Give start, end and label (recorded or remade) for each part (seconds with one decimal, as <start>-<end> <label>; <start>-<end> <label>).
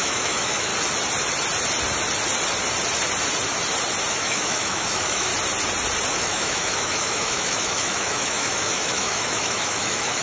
0.0-0.7 remade; 0.7-4.1 recorded; 4.1-5.3 remade; 5.3-6.1 recorded; 6.1-10.2 remade